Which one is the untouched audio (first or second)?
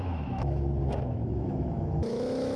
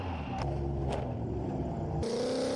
second